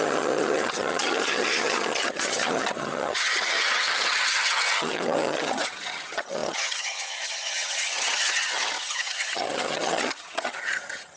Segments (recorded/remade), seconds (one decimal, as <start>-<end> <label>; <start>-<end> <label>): 0.0-11.2 remade